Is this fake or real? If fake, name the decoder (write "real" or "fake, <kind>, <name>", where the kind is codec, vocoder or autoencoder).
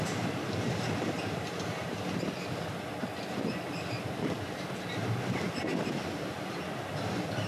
real